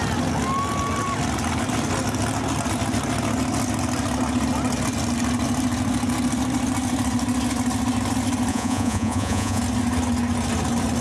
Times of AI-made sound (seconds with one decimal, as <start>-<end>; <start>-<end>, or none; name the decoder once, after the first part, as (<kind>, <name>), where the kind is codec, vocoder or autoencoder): 8.5-9.6 (vocoder, Vocos)